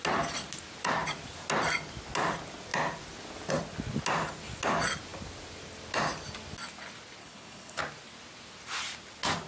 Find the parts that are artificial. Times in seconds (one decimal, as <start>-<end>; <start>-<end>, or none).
7.2-7.8